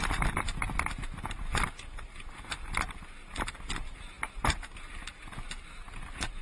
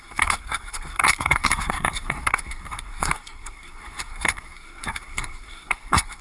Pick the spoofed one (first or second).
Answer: second